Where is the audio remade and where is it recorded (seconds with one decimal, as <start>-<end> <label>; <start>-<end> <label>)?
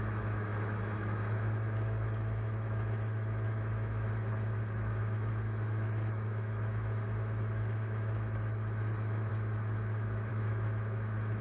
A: 0.0-11.4 remade